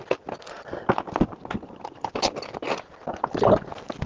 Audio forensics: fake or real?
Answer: real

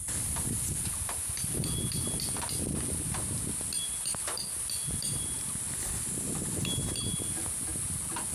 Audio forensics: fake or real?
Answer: fake